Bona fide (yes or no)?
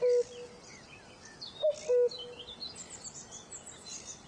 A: yes